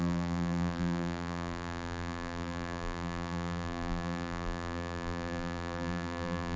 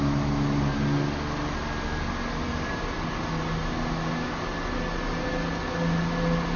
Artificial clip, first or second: first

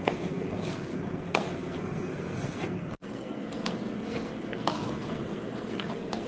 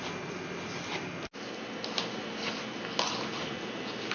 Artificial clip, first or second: first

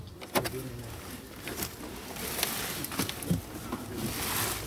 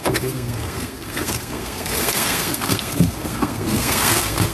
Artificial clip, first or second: second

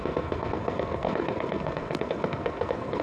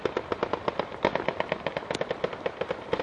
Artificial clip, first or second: first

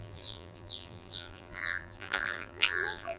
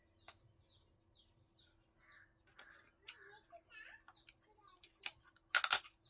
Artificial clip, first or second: first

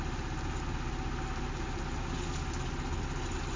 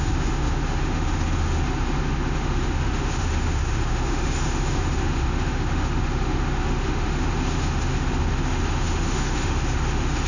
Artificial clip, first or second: second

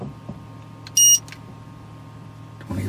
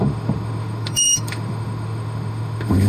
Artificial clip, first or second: second